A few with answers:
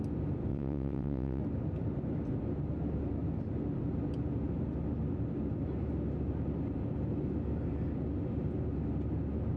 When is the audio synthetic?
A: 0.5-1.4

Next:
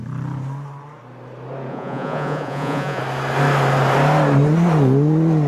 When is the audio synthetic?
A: 1.7-3.0